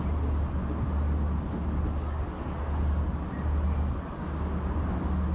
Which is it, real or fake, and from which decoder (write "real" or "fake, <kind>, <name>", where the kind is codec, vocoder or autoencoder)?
real